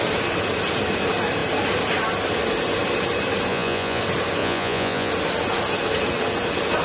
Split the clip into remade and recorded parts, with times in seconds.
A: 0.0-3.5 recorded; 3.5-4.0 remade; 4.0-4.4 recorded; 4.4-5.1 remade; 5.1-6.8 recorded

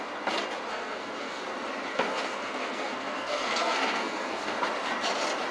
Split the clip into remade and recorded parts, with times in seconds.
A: 0.0-0.7 recorded; 0.7-1.4 remade; 1.4-1.9 recorded; 1.9-4.6 remade; 4.6-5.5 recorded

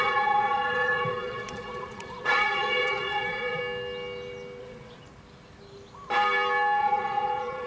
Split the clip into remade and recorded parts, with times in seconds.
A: 0.0-3.6 remade; 3.6-4.6 recorded; 4.6-5.0 remade; 5.0-6.8 recorded; 6.8-7.7 remade

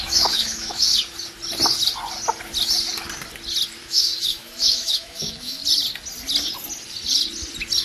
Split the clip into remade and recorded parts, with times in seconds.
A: 0.0-0.9 remade; 0.9-3.8 recorded; 3.8-5.6 remade; 5.6-7.8 recorded

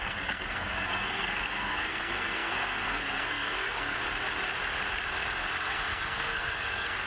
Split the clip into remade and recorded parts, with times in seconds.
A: 0.0-4.0 remade; 4.0-5.7 recorded; 5.7-7.1 remade

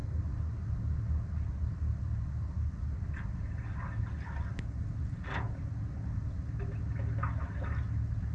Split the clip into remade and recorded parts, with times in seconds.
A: 0.0-8.3 recorded

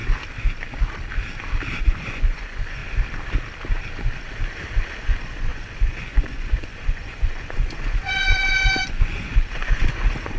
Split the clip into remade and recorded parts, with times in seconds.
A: 0.0-1.7 recorded; 1.7-2.8 remade; 2.8-5.0 recorded; 5.0-10.4 remade

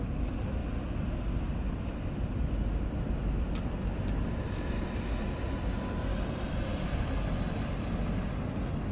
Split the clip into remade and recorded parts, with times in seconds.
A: 0.0-8.9 recorded